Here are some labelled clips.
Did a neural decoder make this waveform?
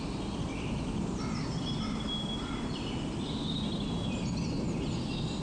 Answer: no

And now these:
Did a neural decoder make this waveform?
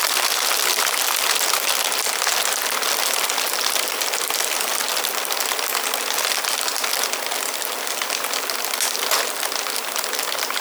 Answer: no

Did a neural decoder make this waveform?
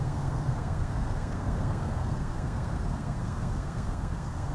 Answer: yes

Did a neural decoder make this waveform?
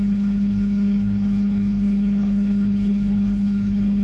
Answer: yes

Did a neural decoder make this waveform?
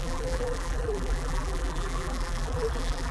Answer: yes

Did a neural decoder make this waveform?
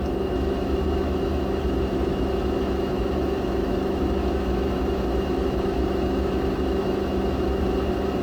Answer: yes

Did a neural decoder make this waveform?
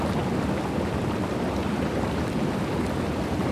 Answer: no